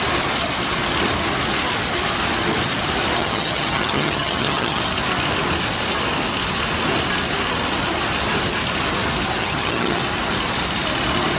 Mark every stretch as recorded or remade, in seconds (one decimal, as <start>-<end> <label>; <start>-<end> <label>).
0.0-3.2 recorded; 3.2-4.8 remade; 4.8-9.4 recorded; 9.4-10.0 remade; 10.0-11.4 recorded